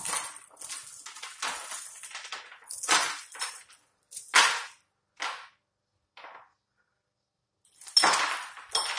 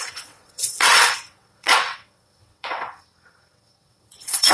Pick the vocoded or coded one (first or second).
second